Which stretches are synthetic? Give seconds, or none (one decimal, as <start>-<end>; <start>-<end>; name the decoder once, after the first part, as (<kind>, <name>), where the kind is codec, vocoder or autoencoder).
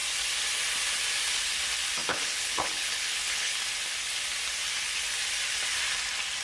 2.1-3.6 (codec, HILCodec)